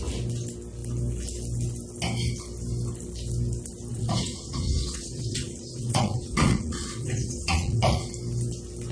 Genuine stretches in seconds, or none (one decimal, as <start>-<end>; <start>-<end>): 0.0-3.9; 8.1-8.9